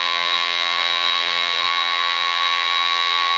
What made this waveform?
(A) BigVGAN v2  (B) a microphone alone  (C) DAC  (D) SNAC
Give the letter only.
A